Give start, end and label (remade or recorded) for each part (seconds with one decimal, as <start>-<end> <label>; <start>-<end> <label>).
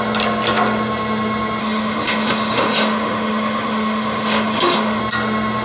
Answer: 0.0-1.6 recorded; 1.6-5.0 remade; 5.0-5.6 recorded